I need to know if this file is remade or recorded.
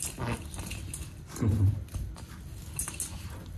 recorded